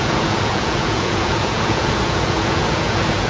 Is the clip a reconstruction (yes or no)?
yes